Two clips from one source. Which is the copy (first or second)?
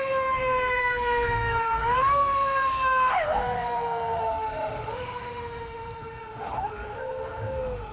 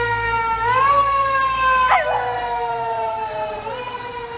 first